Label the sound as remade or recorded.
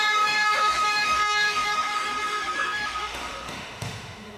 remade